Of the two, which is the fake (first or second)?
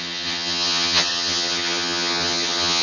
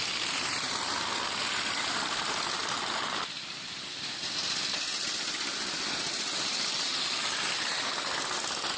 first